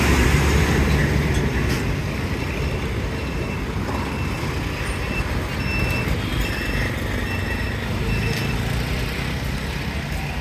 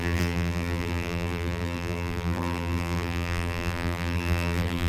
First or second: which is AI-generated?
second